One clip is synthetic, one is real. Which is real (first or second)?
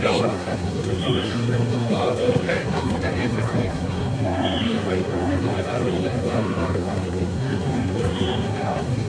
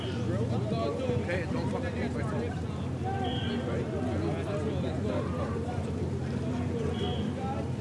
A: second